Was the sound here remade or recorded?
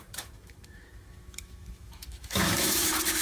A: remade